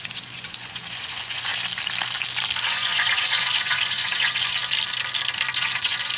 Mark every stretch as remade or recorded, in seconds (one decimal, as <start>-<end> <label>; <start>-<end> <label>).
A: 0.0-1.5 remade; 1.5-2.6 recorded; 2.6-4.6 remade; 4.6-5.6 recorded; 5.6-6.2 remade